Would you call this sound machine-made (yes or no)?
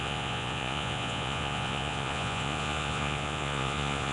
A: yes